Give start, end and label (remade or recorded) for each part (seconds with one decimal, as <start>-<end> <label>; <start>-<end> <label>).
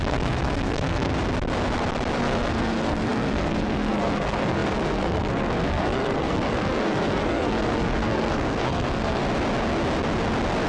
0.0-1.1 remade; 1.1-2.2 recorded; 2.2-9.2 remade; 9.2-10.7 recorded